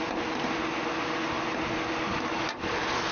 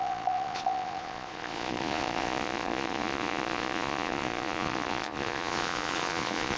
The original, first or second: first